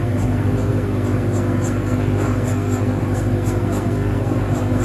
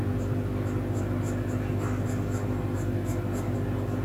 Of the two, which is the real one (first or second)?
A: second